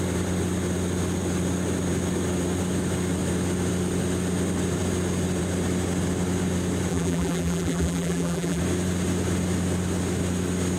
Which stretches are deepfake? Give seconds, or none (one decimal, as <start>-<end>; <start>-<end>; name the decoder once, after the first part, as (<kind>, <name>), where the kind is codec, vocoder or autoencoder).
6.9-8.6 (vocoder, BigVGAN v2)

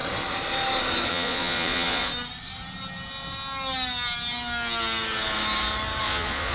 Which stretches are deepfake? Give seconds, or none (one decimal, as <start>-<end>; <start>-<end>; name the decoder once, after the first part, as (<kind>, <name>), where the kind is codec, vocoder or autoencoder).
1.1-2.1 (vocoder, Vocos); 6.0-6.5